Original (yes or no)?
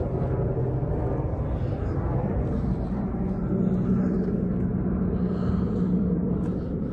yes